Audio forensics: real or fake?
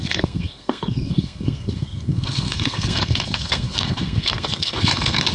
fake